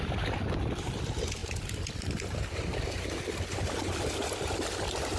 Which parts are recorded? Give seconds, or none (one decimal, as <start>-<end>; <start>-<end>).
0.0-5.2